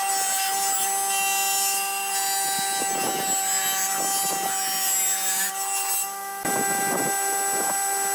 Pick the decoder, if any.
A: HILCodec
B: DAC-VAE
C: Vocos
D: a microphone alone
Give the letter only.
D